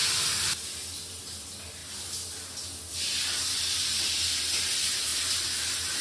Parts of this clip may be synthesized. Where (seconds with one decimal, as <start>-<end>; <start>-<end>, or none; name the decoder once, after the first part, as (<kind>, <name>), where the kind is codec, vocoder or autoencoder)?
none